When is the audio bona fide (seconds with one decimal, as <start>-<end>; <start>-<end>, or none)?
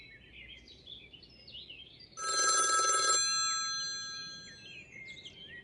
0.0-5.6